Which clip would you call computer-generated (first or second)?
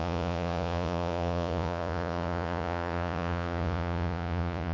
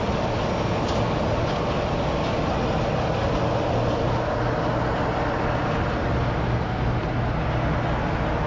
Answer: first